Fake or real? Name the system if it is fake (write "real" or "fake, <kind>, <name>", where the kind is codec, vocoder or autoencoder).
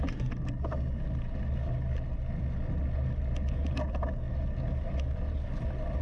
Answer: real